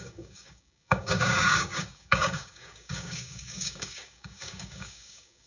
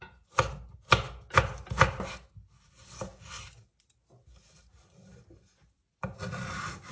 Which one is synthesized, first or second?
first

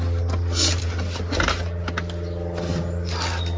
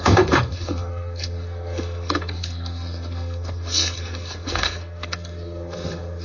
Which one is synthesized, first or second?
second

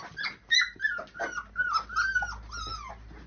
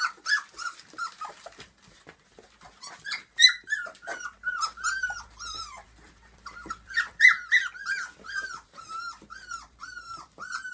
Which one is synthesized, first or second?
second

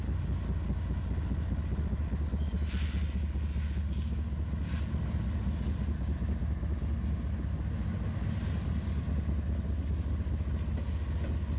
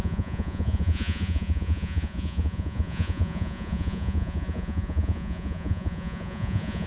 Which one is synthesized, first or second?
second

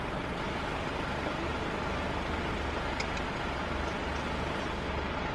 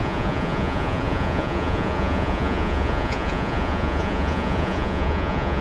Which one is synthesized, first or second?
second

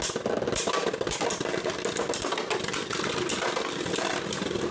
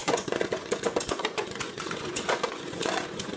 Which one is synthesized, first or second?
second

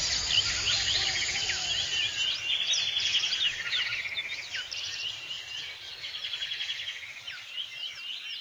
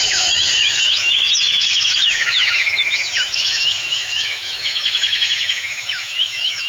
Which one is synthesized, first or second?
second